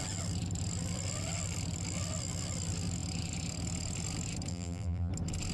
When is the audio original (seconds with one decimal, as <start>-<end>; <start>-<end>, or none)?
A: 0.0-4.5; 5.1-5.5